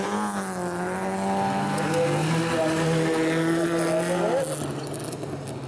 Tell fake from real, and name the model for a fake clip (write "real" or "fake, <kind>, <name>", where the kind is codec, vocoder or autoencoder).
real